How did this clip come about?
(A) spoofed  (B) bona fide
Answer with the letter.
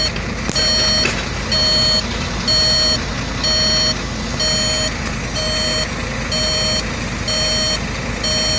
B